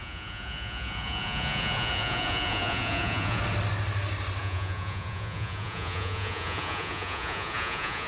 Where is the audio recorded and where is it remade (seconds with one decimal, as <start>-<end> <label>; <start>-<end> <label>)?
0.0-3.4 remade; 3.4-4.4 recorded; 4.4-8.1 remade